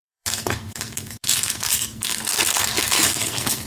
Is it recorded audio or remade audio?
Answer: remade